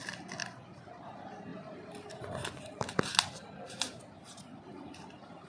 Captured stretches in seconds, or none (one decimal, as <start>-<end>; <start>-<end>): 0.0-5.5